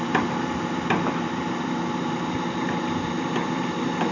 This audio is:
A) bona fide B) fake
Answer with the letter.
A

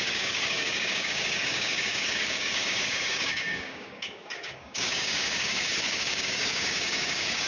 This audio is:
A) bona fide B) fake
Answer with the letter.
B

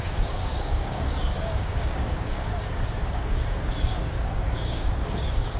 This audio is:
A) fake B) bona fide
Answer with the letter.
A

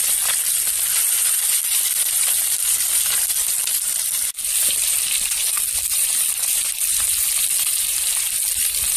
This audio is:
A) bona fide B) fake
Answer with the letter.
A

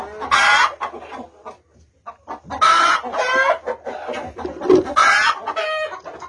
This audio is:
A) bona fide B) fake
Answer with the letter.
A